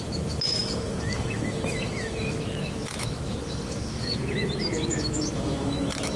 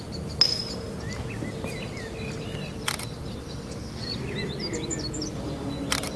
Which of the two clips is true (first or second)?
second